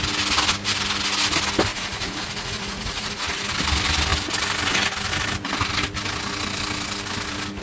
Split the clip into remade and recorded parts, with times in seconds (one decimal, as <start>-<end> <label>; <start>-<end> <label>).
0.0-1.7 recorded; 1.7-3.4 remade; 3.4-7.6 recorded